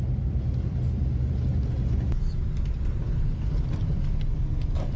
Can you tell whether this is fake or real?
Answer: real